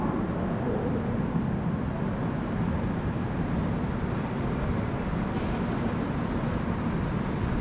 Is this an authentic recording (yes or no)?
no